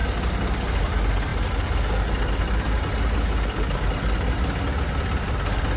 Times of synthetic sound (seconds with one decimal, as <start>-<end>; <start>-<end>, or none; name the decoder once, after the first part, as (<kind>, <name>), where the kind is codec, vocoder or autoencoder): none